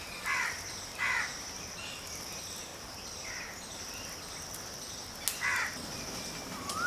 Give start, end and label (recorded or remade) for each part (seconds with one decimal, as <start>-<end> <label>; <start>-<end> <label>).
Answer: 0.0-6.9 recorded

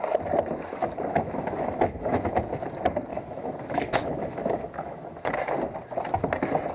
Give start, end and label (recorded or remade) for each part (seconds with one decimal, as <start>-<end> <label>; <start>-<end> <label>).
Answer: 0.0-1.1 recorded; 1.1-2.4 remade; 2.4-3.1 recorded; 3.1-5.3 remade; 5.3-6.7 recorded

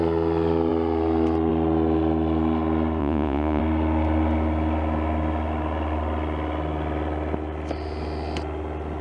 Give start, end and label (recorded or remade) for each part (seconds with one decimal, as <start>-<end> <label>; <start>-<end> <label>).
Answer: 0.0-3.0 recorded; 3.0-3.6 remade; 3.6-9.0 recorded

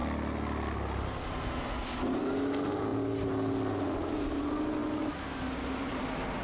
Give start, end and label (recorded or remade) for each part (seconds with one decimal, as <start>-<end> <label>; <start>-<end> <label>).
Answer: 0.0-4.8 recorded; 4.8-5.4 remade; 5.4-6.4 recorded

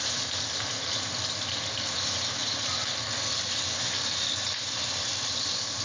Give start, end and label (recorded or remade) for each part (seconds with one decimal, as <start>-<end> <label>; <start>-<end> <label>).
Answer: 0.0-5.8 recorded

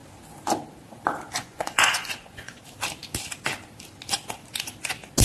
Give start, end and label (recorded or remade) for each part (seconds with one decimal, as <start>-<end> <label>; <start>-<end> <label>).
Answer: 0.0-1.4 recorded; 1.4-2.6 remade; 2.6-5.2 recorded

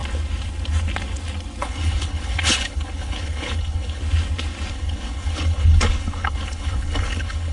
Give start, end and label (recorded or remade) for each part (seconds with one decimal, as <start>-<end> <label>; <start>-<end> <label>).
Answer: 0.0-1.6 recorded; 1.6-4.0 remade; 4.0-4.7 recorded; 4.7-7.5 remade

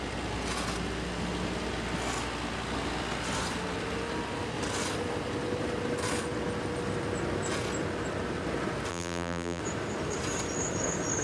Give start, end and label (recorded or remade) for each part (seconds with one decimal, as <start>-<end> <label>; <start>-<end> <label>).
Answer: 0.0-8.9 recorded; 8.9-9.6 remade; 9.6-11.2 recorded